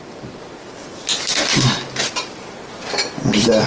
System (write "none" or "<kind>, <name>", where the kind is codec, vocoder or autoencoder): none